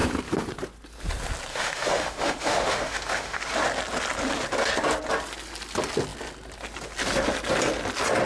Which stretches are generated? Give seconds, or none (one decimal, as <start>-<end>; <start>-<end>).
1.5-3.4